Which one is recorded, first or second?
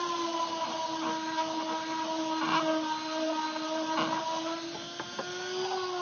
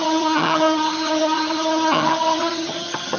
first